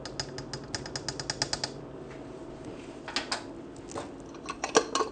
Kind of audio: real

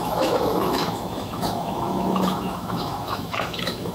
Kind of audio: fake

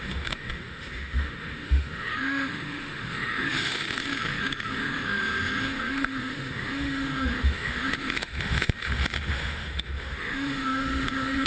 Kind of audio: fake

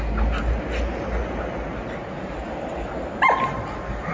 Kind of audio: real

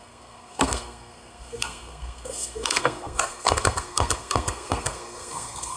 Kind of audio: fake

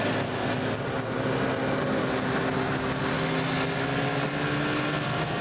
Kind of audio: real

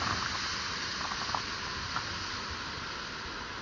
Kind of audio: real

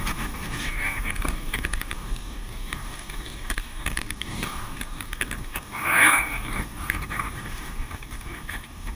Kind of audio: fake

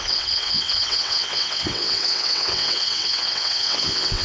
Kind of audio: fake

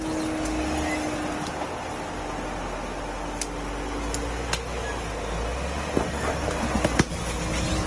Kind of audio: real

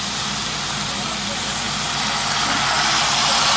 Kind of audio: real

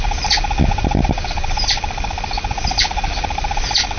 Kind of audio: real